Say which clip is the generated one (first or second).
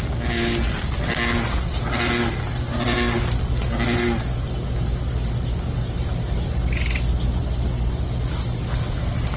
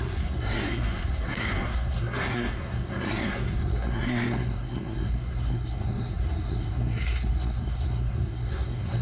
second